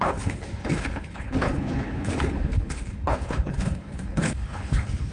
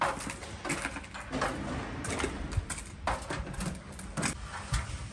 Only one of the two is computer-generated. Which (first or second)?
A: first